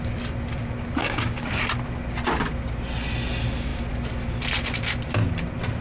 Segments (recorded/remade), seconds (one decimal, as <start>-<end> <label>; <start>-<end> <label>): 0.0-1.0 recorded; 1.0-1.6 remade; 1.6-5.8 recorded